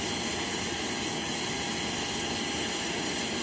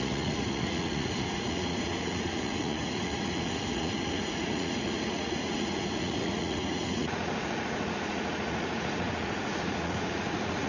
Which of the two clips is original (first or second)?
first